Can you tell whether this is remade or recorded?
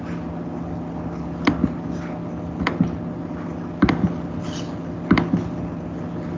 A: recorded